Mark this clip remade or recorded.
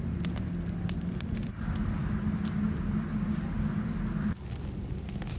recorded